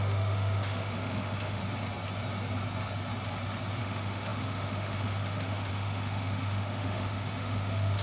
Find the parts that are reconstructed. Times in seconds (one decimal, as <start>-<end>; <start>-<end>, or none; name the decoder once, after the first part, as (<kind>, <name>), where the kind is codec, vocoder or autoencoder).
0.0-1.6 (autoencoder, DAC-VAE); 3.8-8.0